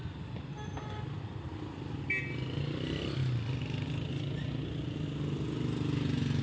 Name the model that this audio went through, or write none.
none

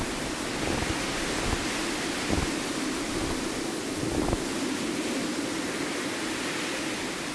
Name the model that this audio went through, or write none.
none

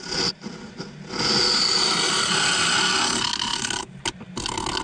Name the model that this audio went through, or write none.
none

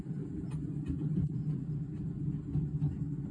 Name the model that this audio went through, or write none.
none